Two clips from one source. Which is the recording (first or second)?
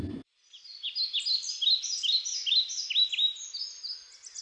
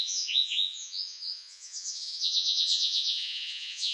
first